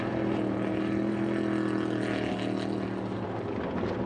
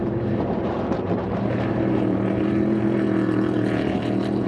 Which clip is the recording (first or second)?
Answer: first